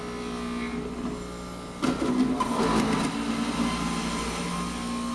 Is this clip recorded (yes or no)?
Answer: yes